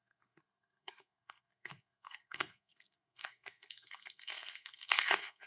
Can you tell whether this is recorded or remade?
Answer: remade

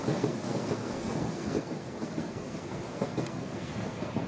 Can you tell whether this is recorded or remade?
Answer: remade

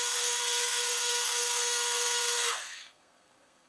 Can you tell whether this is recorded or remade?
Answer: remade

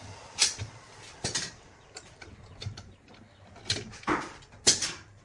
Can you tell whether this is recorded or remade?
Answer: recorded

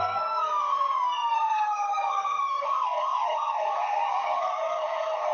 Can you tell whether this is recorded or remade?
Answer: remade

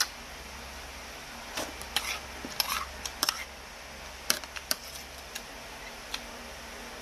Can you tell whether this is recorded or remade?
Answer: recorded